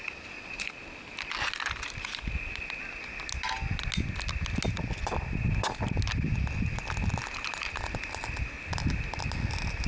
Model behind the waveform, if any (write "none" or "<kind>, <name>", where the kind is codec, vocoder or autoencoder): none